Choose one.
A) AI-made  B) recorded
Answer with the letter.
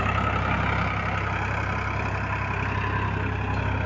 B